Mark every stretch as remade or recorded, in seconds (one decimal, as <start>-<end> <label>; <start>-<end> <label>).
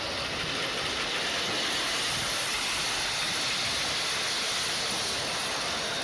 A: 0.0-6.0 recorded